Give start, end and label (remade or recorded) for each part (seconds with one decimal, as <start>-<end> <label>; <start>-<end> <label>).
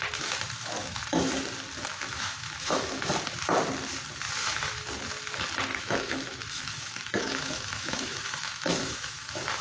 0.0-0.8 recorded; 0.8-1.3 remade; 1.3-1.9 recorded; 1.9-3.1 remade; 3.1-4.4 recorded; 4.4-4.9 remade; 4.9-5.7 recorded; 5.7-9.6 remade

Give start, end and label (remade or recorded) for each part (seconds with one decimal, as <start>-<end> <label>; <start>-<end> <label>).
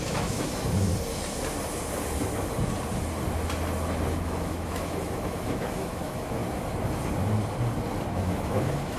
0.0-0.9 remade; 0.9-4.2 recorded; 4.2-6.4 remade; 6.4-8.1 recorded; 8.1-9.0 remade